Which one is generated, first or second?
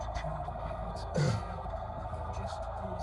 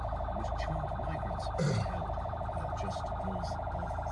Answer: first